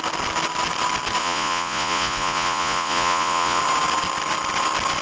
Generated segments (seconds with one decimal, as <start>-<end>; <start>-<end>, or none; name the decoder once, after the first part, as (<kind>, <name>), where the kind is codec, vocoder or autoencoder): 1.2-3.6 (vocoder, Vocos)